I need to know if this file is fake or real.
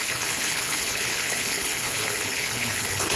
fake